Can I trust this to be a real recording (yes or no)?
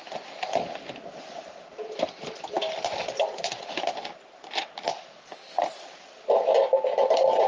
yes